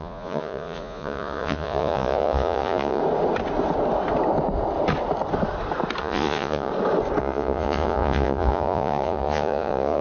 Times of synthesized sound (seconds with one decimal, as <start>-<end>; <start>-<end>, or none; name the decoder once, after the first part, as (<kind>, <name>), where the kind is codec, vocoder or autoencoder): 0.0-3.0 (vocoder, Vocos); 6.0-6.7; 7.2-10.0